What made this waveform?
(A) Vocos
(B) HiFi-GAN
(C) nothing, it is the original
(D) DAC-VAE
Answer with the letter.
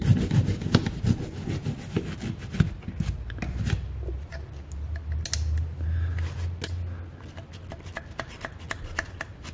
C